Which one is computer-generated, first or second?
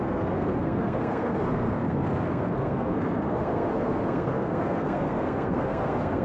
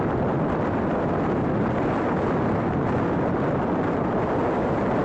first